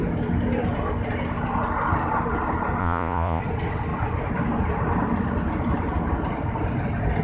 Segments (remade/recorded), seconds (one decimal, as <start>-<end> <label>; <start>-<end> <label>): 0.0-2.8 recorded; 2.8-3.4 remade; 3.4-7.2 recorded